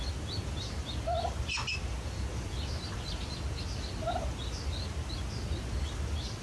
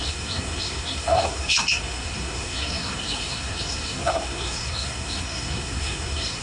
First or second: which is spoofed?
second